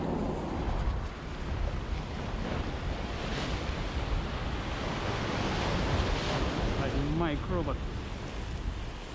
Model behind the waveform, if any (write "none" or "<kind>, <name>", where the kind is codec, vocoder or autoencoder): none